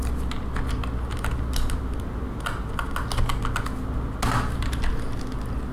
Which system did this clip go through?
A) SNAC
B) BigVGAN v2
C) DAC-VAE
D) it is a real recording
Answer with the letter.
D